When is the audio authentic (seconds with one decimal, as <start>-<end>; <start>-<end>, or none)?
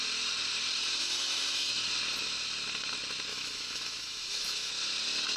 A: 0.0-1.0; 1.7-3.3; 4.7-5.4